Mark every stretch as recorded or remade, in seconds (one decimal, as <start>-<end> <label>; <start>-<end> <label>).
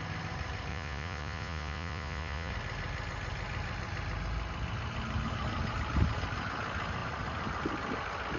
0.0-0.7 recorded; 0.7-2.5 remade; 2.5-8.4 recorded